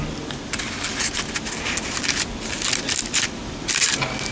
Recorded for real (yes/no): yes